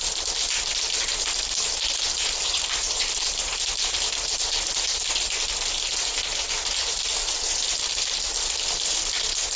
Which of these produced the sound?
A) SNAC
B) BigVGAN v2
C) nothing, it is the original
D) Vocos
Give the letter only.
C